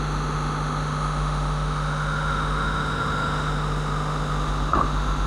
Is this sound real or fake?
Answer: fake